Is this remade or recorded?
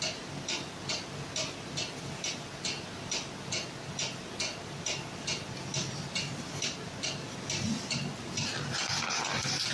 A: recorded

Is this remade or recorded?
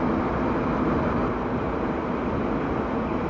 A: recorded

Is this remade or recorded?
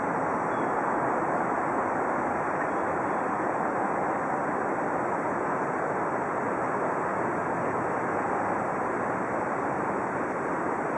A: recorded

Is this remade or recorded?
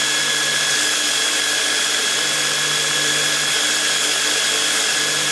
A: recorded